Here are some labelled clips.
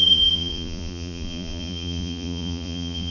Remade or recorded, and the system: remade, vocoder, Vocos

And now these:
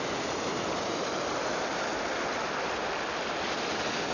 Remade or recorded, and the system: recorded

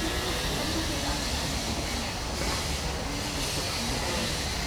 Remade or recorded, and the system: recorded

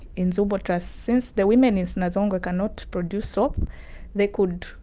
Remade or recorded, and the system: recorded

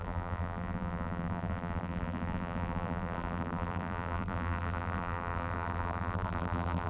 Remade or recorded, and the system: remade, vocoder, BigVGAN v2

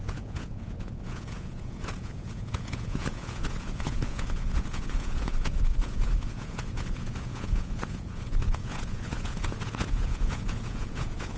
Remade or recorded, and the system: remade, vocoder, Vocos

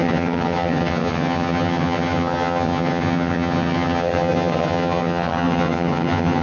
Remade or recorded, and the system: remade, vocoder, HiFi-GAN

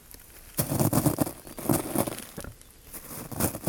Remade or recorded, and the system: recorded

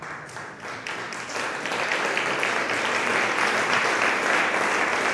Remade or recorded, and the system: remade, vocoder, BigVGAN v2